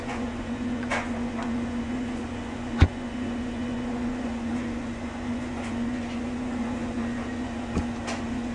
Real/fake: fake